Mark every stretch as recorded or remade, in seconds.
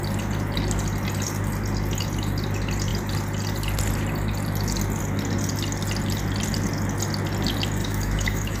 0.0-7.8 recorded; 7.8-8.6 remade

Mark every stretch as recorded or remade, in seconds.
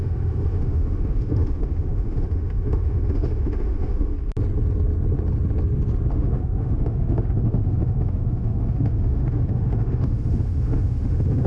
0.0-4.1 remade; 4.1-6.1 recorded; 6.1-11.5 remade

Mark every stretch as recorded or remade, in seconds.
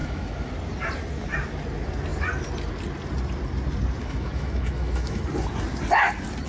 0.0-0.5 remade; 0.5-4.0 recorded; 4.0-5.2 remade; 5.2-6.5 recorded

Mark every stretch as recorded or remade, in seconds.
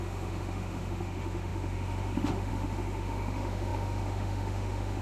0.0-5.0 remade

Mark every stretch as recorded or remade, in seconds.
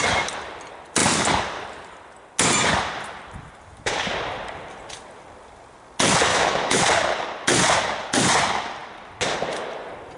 0.0-6.3 recorded; 6.3-6.8 remade; 6.8-10.2 recorded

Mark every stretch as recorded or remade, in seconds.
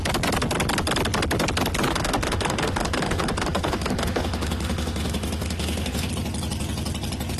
0.0-1.9 recorded; 1.9-6.1 remade; 6.1-7.4 recorded